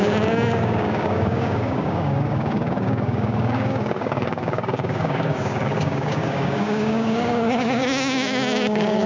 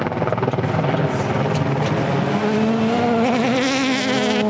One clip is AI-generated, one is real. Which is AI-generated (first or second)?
first